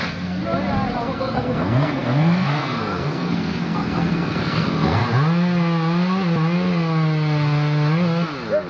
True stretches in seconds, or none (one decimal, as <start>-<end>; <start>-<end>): 0.4-1.0; 5.0-8.7